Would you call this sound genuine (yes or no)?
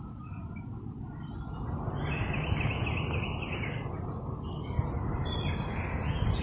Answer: yes